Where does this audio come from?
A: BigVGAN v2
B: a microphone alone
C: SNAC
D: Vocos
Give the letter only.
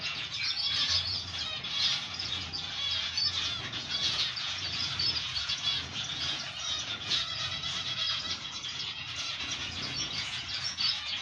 D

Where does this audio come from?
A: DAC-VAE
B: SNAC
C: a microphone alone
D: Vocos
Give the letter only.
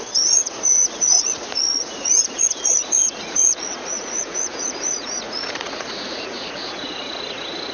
D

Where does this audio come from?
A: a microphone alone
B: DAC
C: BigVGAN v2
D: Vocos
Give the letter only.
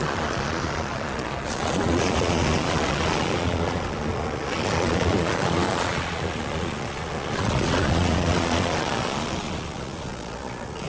D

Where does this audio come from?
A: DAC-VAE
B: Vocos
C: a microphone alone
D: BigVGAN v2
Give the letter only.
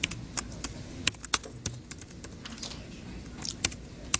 C